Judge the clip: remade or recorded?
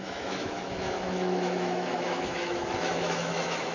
remade